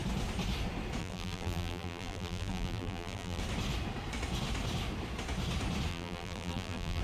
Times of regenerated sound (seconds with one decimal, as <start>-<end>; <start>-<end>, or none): 1.0-3.4; 5.9-7.0